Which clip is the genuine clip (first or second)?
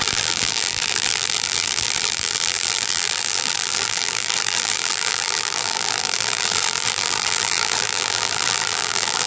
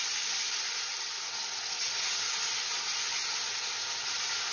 second